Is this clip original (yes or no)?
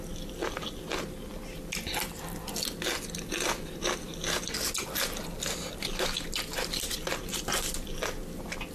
yes